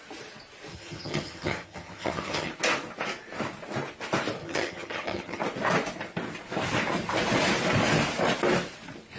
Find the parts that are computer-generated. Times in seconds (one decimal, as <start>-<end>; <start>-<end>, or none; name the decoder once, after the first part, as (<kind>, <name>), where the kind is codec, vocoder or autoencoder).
0.7-2.5 (vocoder, HiFi-GAN); 4.4-5.4